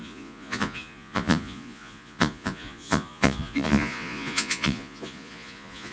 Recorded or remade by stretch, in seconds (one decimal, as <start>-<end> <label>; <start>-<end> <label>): 0.0-5.9 remade